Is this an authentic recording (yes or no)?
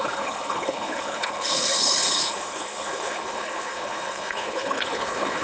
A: no